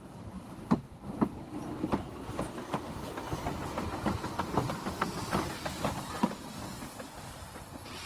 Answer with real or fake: real